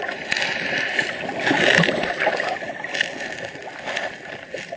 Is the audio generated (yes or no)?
no